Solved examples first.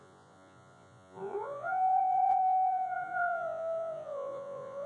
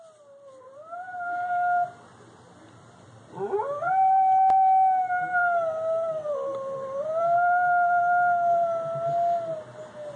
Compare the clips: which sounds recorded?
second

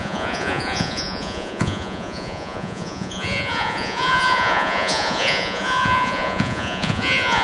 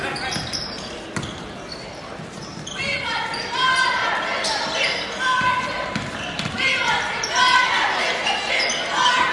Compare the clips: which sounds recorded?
second